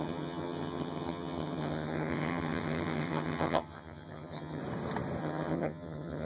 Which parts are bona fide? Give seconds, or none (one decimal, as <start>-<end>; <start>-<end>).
4.6-5.2